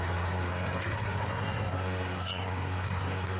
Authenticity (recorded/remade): remade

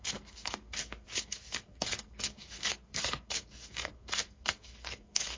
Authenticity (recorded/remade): remade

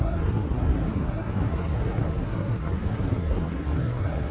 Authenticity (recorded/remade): remade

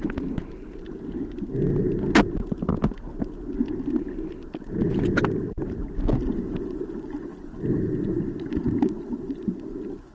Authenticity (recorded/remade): recorded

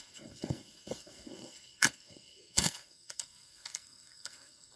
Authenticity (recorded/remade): remade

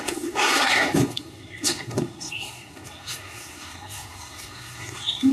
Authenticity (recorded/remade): remade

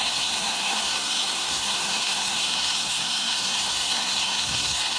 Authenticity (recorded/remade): remade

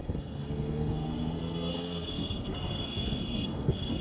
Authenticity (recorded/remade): remade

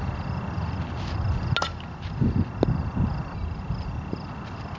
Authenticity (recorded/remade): recorded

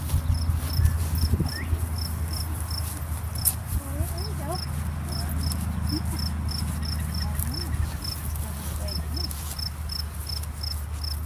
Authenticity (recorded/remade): recorded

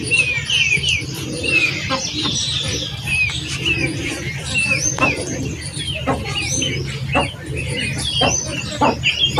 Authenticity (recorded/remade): recorded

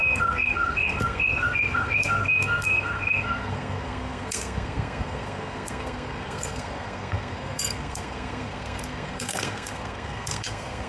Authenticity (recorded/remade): remade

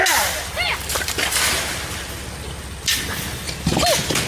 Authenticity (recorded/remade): recorded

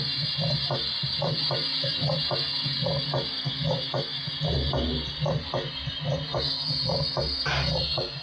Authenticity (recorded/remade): recorded